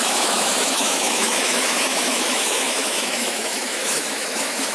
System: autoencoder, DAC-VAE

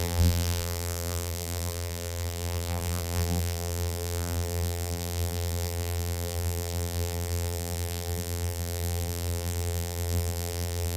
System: vocoder, BigVGAN v2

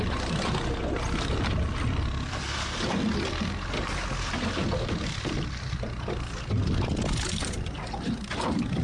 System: none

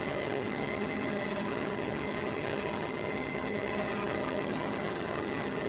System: vocoder, HiFi-GAN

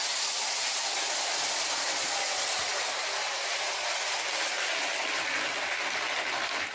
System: none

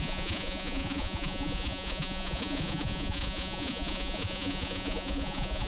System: vocoder, Vocos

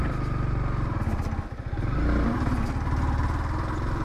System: none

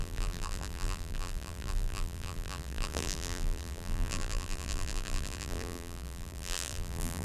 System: vocoder, BigVGAN v2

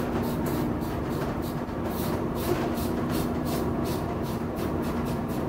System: vocoder, BigVGAN v2